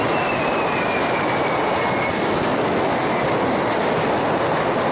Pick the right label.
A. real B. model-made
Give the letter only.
A